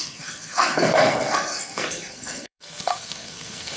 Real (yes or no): no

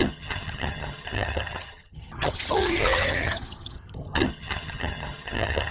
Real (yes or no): no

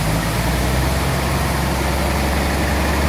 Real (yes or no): yes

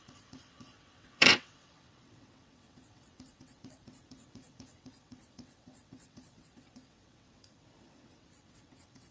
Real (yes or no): no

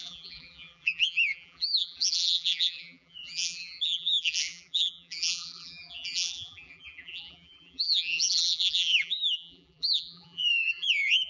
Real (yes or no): no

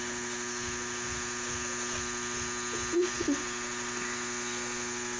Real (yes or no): yes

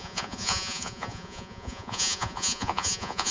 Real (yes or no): no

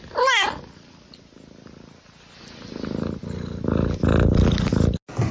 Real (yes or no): yes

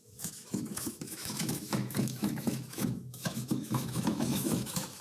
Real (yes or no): no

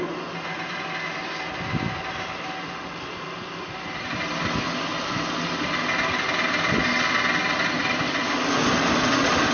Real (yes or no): yes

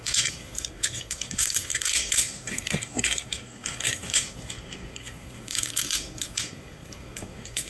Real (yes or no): no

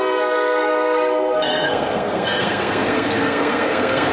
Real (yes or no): no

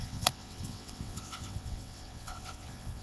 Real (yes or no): no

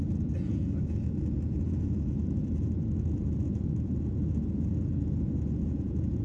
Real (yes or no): no